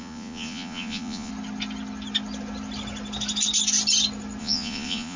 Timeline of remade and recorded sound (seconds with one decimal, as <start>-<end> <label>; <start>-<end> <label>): 0.0-1.3 remade; 1.3-4.4 recorded; 4.4-5.2 remade